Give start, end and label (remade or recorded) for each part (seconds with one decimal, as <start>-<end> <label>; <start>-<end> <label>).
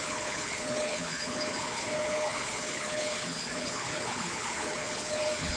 0.0-5.6 remade